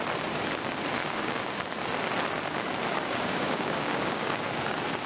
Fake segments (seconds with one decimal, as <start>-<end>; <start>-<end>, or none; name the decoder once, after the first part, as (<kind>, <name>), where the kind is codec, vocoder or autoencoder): 1.0-1.5 (codec, DAC); 2.9-4.5